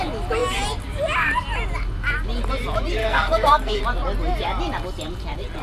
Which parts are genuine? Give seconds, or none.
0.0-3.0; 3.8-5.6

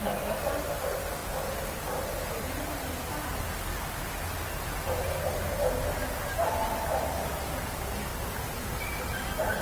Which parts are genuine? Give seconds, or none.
0.0-9.6

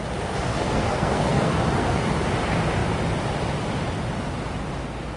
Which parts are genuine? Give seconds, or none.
0.0-0.5; 2.1-5.2

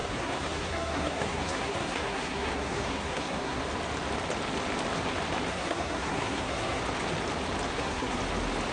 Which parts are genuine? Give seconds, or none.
3.6-5.5; 6.8-7.7; 8.2-8.7

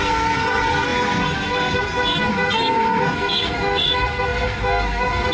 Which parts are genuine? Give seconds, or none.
none

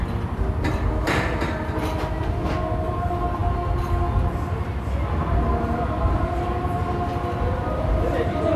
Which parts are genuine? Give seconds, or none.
0.0-8.6